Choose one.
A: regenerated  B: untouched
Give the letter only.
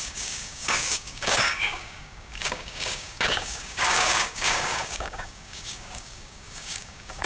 A